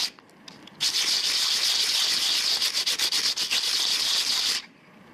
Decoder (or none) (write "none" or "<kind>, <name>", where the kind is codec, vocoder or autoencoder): none